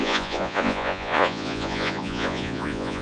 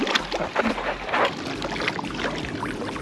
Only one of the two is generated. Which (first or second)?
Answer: first